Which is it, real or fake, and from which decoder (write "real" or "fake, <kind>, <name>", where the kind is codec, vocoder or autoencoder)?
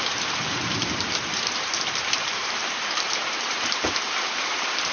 fake, vocoder, BigVGAN v2